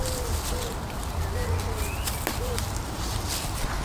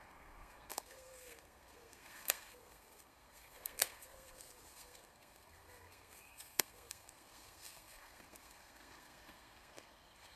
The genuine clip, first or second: first